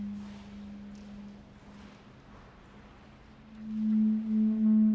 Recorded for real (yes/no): yes